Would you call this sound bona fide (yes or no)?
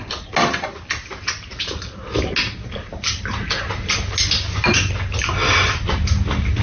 yes